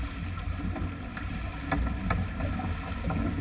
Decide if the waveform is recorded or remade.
recorded